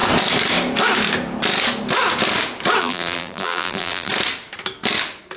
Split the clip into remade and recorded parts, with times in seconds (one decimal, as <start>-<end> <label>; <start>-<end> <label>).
0.0-2.8 recorded; 2.8-4.1 remade; 4.1-5.4 recorded